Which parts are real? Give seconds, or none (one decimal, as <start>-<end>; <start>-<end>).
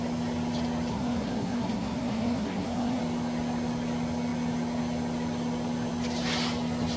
0.0-0.9; 3.0-7.0